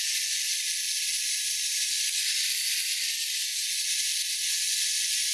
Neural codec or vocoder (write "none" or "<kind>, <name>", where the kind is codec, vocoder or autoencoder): none